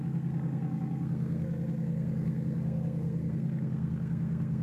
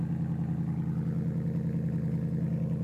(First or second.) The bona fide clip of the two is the second